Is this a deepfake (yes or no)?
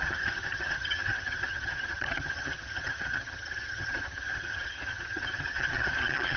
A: yes